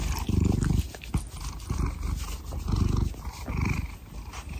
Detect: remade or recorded recorded